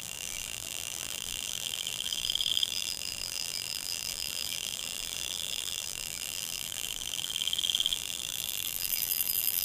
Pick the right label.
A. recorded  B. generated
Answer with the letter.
B